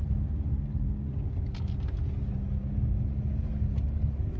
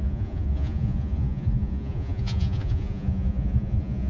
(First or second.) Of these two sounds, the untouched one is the first